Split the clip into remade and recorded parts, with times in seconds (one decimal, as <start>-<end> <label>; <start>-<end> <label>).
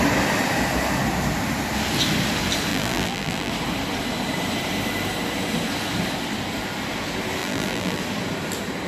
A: 0.0-2.7 recorded; 2.7-3.5 remade; 3.5-7.4 recorded; 7.4-8.0 remade; 8.0-8.9 recorded